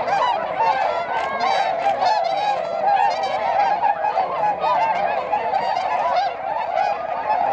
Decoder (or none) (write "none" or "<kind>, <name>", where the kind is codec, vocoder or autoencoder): none